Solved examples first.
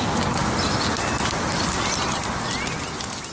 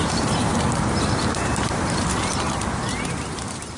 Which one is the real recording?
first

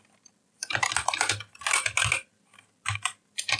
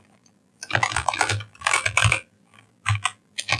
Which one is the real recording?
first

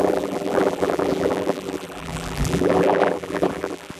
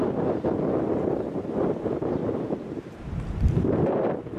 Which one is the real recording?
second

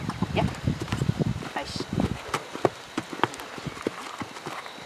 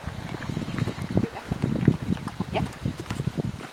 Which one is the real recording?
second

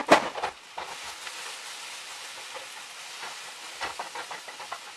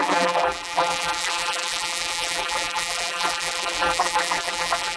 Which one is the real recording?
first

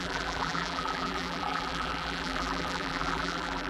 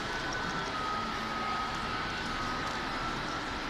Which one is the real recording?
second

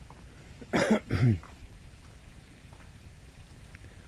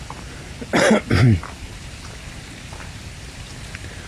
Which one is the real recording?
second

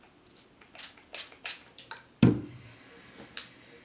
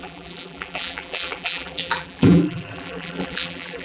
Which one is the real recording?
first